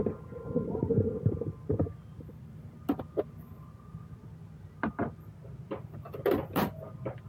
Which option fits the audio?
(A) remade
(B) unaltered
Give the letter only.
B